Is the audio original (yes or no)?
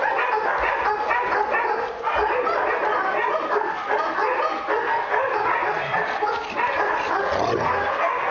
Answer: yes